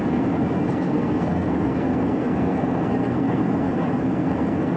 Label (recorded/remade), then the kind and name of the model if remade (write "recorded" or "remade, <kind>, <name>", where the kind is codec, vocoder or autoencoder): remade, codec, SNAC